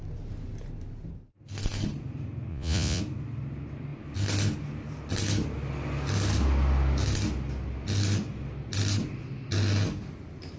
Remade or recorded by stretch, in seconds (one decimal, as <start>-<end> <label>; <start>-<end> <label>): 0.0-2.5 recorded; 2.5-3.0 remade; 3.0-10.6 recorded